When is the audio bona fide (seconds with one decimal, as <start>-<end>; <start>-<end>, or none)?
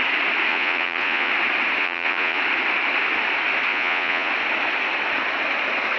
0.0-0.5; 1.3-1.8; 2.4-3.7; 4.3-6.0